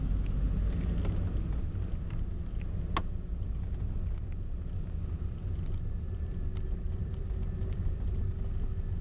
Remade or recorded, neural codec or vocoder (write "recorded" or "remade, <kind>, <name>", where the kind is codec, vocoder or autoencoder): recorded